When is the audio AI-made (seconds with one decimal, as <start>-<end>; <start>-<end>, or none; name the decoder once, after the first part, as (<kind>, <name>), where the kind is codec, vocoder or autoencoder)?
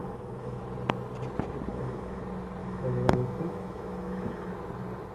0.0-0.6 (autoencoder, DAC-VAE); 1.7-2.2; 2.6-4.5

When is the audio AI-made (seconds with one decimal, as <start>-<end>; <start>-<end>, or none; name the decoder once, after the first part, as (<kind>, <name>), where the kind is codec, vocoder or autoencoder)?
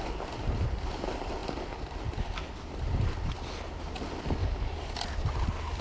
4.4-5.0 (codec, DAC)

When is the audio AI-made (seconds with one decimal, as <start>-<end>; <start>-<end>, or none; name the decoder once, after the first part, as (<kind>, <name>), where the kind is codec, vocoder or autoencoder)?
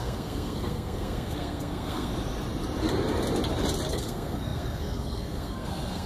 0.0-2.1 (codec, SNAC); 3.9-6.1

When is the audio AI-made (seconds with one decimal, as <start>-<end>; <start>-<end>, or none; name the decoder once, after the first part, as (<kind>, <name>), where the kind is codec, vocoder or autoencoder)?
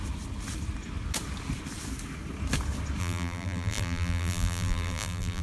3.0-5.4 (vocoder, BigVGAN v2)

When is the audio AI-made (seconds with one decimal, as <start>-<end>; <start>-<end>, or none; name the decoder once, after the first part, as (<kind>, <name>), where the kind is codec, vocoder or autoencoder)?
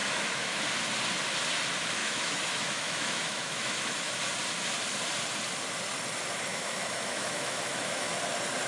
0.0-0.6 (autoencoder, DAC-VAE); 2.0-4.2; 6.5-8.1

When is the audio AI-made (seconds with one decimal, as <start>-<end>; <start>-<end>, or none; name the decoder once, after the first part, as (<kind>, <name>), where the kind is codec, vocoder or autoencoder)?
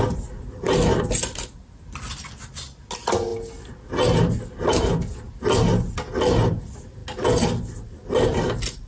none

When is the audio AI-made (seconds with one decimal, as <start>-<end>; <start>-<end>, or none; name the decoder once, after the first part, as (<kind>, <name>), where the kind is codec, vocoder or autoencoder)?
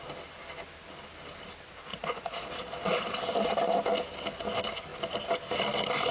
1.9-3.2 (vocoder, Vocos)